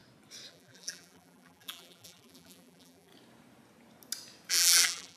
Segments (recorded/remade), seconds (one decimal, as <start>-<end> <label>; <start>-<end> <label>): 0.0-0.5 recorded; 0.5-3.1 remade; 3.1-4.5 recorded; 4.5-5.2 remade